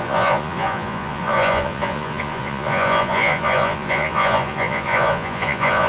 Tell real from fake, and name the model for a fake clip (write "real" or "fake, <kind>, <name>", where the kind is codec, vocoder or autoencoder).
fake, vocoder, Vocos